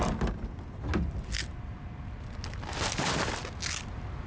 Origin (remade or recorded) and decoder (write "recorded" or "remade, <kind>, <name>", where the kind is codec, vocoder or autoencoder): recorded